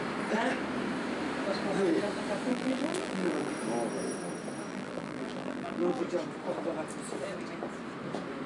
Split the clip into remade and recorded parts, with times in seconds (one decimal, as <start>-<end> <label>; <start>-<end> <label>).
0.0-2.5 recorded; 2.5-3.5 remade; 3.5-4.7 recorded; 4.7-6.0 remade; 6.0-8.5 recorded